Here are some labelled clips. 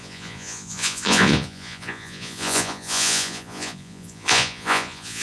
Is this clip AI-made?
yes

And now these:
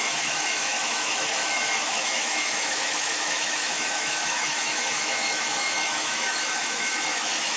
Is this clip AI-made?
yes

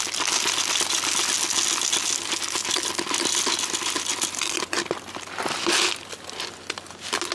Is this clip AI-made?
no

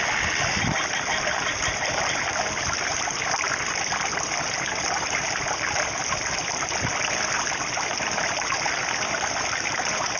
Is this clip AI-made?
no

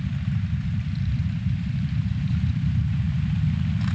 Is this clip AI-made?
yes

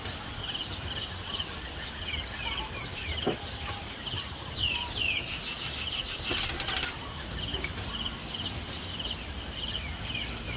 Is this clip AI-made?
no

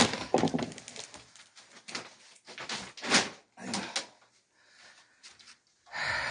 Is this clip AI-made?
no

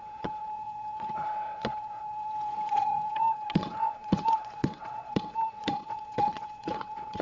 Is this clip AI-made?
yes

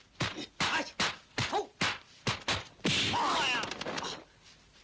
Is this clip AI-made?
no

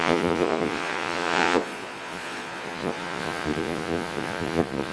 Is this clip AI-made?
yes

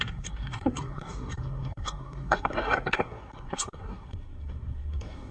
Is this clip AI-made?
yes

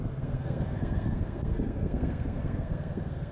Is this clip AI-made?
yes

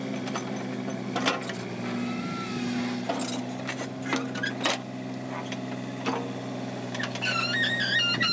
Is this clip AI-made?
no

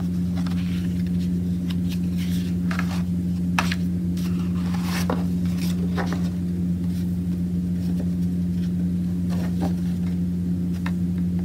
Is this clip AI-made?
no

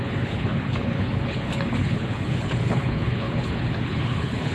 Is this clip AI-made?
yes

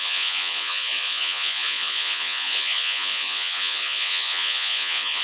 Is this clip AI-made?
yes